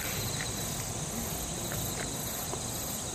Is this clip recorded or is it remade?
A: recorded